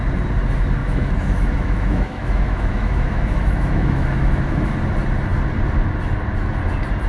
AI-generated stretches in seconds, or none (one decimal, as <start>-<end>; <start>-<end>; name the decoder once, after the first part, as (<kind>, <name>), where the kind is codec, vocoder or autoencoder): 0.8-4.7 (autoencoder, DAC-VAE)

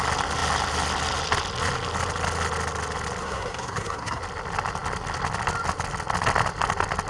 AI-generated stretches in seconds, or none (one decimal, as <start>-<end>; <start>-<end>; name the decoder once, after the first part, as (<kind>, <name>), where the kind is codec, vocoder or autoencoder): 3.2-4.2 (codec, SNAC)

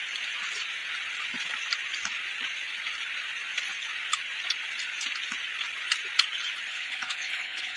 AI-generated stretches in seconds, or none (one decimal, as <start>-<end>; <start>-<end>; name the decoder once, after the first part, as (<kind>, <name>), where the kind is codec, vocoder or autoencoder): 6.7-7.8 (codec, HILCodec)

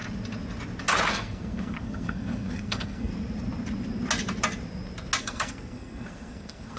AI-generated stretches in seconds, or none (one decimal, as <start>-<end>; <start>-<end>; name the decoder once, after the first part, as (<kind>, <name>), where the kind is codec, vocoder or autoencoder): 1.1-3.1 (codec, SNAC); 5.2-6.8

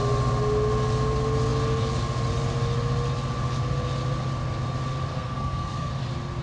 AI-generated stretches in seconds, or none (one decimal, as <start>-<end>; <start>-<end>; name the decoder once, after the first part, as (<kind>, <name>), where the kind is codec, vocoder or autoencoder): 5.1-5.9 (codec, SNAC)

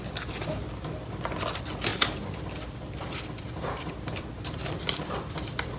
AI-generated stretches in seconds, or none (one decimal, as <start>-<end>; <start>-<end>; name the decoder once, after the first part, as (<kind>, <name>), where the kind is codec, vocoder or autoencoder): 1.9-5.8 (vocoder, BigVGAN v2)

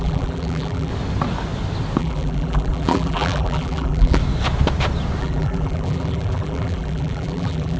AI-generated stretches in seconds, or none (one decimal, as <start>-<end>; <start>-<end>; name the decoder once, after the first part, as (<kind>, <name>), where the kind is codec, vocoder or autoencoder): 0.0-0.9 (vocoder, BigVGAN v2); 2.0-4.2; 5.2-7.8